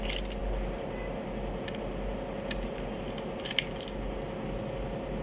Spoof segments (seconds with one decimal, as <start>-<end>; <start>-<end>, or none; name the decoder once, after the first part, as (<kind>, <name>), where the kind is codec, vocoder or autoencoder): none